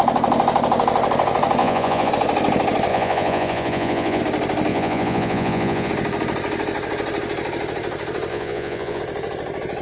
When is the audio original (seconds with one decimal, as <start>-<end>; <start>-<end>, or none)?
0.0-1.6; 2.1-2.9; 4.2-4.7; 5.9-8.3; 9.0-9.8